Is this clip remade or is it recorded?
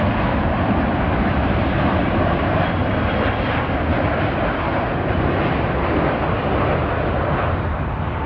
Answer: recorded